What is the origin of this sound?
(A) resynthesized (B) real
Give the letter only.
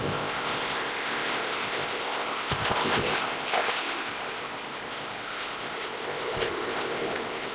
A